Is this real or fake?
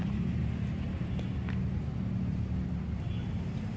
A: real